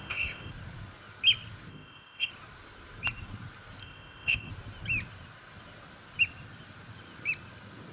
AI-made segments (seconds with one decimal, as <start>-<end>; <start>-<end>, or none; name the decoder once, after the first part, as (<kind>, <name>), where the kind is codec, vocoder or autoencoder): 0.0-0.5 (codec, ZipCodec); 1.7-2.3; 3.8-4.5